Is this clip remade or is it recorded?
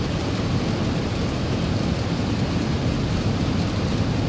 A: recorded